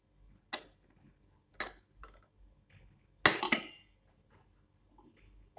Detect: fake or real real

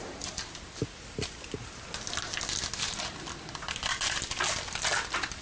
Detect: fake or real real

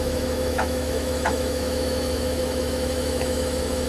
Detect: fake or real fake